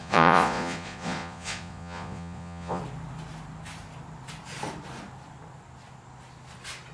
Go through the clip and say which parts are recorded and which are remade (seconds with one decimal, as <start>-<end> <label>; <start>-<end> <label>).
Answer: 0.0-2.8 remade; 2.8-6.9 recorded